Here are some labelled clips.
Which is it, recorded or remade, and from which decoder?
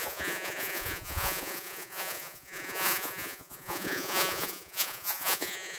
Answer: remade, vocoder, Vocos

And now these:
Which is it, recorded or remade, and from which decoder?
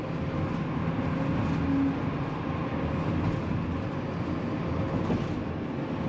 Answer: recorded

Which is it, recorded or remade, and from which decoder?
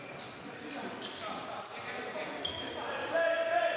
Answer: recorded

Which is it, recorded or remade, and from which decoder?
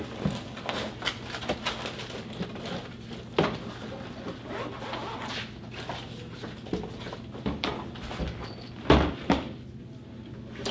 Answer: recorded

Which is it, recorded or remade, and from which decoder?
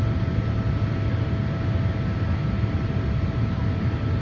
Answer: recorded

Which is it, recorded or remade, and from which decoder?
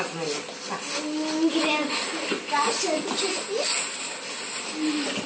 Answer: recorded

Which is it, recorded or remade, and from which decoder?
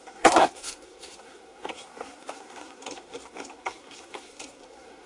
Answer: remade, codec, SNAC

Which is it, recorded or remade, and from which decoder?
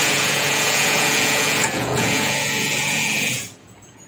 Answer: remade, vocoder, Vocos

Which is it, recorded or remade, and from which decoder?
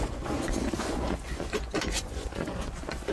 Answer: remade, vocoder, Vocos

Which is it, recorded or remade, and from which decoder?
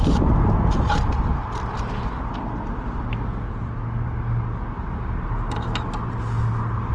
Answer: recorded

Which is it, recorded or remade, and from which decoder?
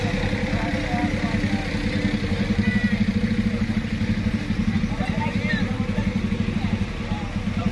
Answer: recorded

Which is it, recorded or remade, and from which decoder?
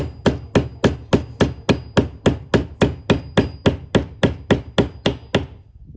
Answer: recorded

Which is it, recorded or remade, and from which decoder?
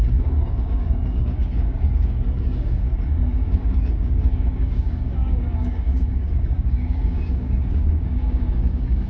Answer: remade, codec, DAC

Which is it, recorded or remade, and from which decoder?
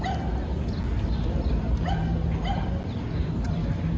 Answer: recorded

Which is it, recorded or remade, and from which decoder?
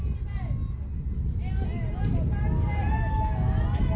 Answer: recorded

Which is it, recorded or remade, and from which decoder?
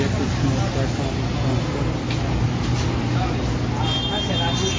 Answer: recorded